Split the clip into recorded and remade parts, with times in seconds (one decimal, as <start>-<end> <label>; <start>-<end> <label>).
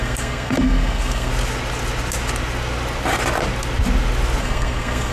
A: 0.0-1.3 remade; 1.3-4.4 recorded; 4.4-5.1 remade